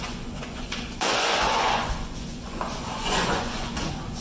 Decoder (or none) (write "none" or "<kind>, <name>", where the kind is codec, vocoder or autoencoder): vocoder, Vocos